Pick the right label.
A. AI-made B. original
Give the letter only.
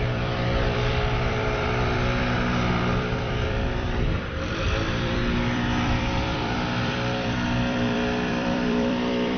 A